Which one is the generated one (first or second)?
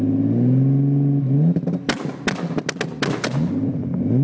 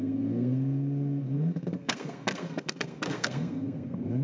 second